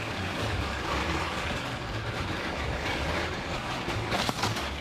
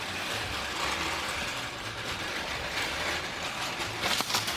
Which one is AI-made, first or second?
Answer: first